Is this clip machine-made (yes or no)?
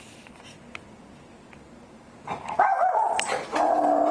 no